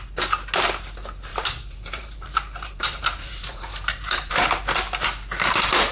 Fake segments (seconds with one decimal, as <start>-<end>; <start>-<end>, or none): 1.3-4.3